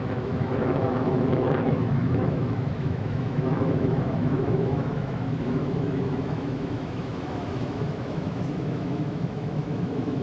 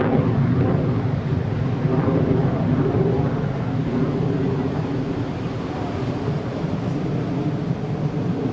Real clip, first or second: second